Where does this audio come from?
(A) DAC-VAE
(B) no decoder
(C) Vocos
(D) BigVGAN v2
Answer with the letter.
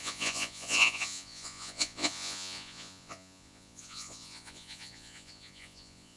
C